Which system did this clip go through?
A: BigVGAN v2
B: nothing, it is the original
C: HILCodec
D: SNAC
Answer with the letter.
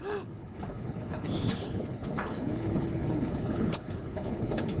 C